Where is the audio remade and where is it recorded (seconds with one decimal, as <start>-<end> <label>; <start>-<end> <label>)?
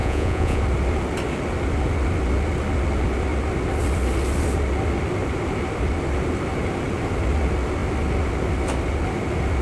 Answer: 0.0-0.6 remade; 0.6-9.6 recorded